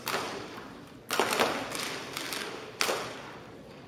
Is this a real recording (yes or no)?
yes